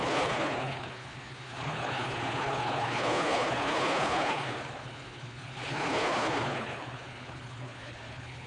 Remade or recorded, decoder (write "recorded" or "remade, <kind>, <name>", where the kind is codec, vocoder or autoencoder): remade, codec, HILCodec